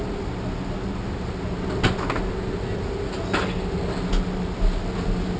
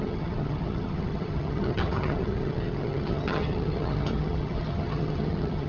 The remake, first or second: second